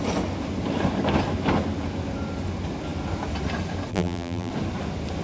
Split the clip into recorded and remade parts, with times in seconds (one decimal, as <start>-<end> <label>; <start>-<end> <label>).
0.0-3.9 recorded; 3.9-4.5 remade; 4.5-5.2 recorded